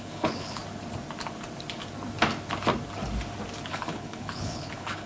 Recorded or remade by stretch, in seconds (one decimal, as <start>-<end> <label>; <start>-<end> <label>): 0.0-0.6 remade; 0.6-3.7 recorded; 3.7-5.1 remade